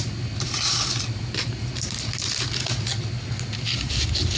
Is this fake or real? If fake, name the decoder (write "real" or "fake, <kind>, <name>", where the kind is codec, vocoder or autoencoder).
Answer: real